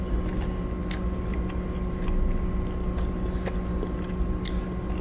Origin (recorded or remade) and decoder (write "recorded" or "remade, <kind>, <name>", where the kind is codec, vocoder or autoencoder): recorded